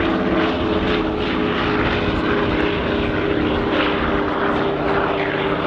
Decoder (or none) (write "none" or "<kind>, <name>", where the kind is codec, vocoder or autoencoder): none